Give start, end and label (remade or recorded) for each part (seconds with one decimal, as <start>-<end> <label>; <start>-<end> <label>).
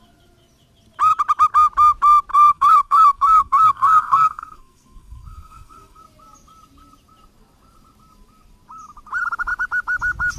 0.0-2.3 recorded; 2.3-6.0 remade; 6.0-10.4 recorded